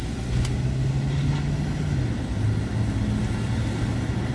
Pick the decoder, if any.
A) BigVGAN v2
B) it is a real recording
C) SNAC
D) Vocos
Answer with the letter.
B